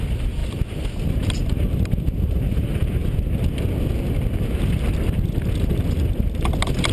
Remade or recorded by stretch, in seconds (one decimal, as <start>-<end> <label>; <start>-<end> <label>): 0.0-6.9 recorded

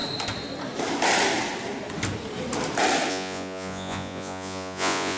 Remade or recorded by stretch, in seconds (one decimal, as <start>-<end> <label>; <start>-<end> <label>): 0.0-3.1 recorded; 3.1-5.2 remade

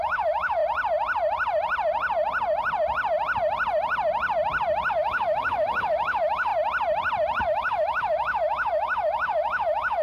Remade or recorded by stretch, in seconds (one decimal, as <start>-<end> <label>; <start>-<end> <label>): 0.0-0.6 remade; 0.6-4.9 recorded; 4.9-6.5 remade; 6.5-7.4 recorded; 7.4-10.0 remade